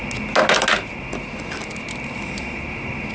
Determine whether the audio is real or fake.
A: real